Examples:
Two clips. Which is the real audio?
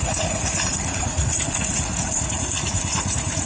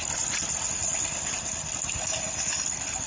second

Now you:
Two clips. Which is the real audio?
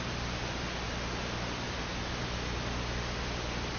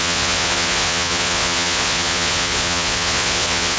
first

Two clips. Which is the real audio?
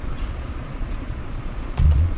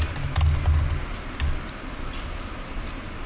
second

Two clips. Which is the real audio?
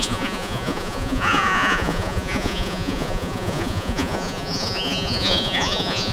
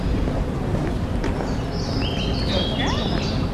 second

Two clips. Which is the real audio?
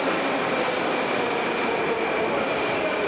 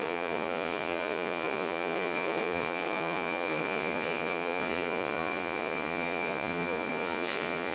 first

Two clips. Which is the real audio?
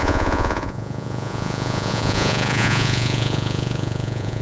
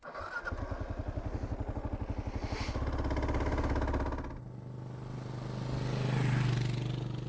second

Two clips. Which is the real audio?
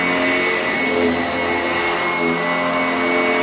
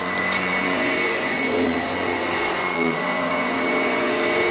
first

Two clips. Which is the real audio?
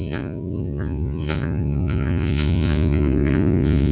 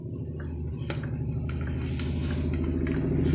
second